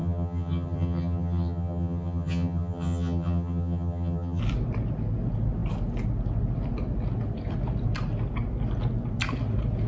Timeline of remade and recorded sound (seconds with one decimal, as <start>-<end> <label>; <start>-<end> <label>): 0.0-4.4 remade; 4.4-9.9 recorded